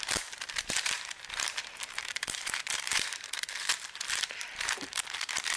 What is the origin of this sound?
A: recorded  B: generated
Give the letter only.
B